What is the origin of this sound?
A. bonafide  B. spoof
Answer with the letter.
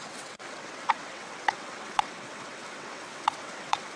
B